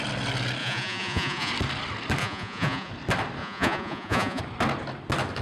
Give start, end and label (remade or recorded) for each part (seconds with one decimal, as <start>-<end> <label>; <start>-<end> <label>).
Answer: 0.0-0.6 recorded; 0.6-1.5 remade; 1.5-2.2 recorded; 2.2-2.9 remade; 2.9-3.4 recorded; 3.4-4.4 remade; 4.4-5.4 recorded